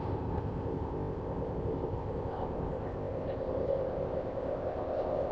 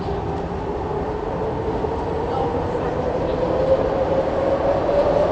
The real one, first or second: second